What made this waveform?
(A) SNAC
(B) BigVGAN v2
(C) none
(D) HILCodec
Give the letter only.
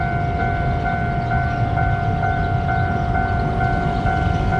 C